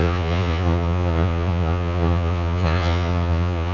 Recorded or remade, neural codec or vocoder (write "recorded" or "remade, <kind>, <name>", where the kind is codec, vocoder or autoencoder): remade, vocoder, Vocos